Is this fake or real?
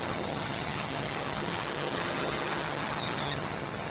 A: fake